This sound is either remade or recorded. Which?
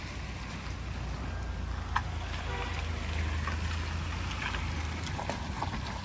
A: recorded